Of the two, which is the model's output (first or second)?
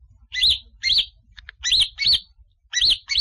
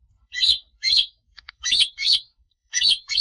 second